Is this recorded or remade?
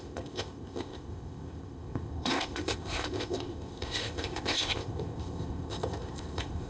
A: remade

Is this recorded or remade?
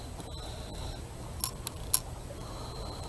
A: recorded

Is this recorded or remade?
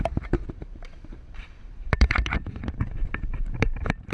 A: remade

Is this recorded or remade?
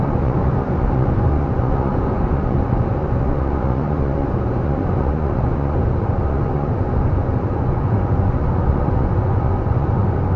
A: remade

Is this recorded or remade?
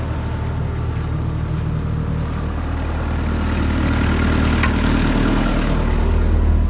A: recorded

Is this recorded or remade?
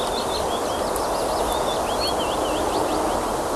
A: recorded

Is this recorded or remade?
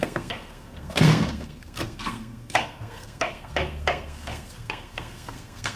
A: remade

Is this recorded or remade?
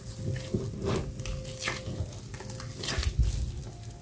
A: recorded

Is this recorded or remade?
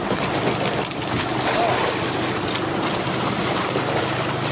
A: recorded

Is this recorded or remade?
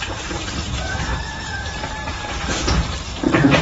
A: remade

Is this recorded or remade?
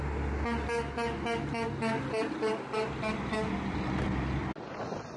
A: recorded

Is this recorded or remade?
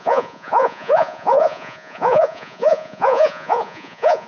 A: remade